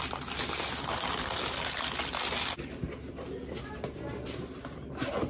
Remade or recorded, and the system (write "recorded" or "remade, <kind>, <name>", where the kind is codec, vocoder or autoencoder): recorded